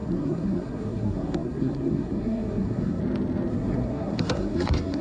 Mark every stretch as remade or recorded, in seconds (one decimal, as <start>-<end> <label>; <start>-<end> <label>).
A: 0.0-3.0 remade; 3.0-3.5 recorded; 3.5-5.0 remade